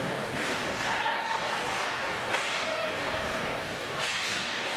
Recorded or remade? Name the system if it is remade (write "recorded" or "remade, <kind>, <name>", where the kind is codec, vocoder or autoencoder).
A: remade, codec, DAC